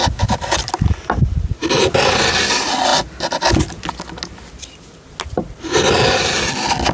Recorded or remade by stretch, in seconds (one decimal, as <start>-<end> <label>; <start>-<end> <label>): 0.0-6.9 recorded